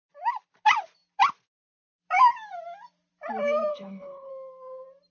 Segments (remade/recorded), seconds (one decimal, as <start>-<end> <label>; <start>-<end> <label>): 0.0-3.7 recorded; 3.7-4.3 remade; 4.3-5.1 recorded